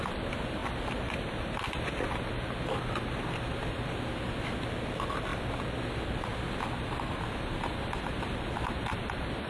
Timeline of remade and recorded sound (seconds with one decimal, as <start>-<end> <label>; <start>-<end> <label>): 0.0-9.5 recorded

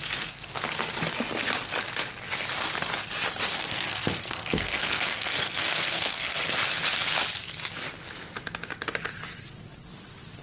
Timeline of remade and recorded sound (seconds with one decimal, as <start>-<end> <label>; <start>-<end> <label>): 0.0-0.6 remade; 0.6-3.5 recorded; 3.5-6.4 remade; 6.4-10.4 recorded

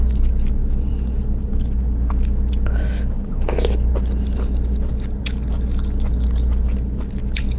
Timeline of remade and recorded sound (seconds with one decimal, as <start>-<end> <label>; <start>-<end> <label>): 0.0-7.6 recorded